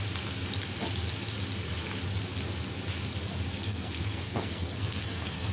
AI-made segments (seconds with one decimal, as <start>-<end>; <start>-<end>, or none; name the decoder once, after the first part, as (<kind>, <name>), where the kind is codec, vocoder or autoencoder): 3.5-5.5 (codec, SNAC)